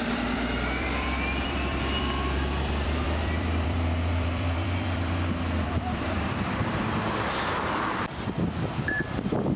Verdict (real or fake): fake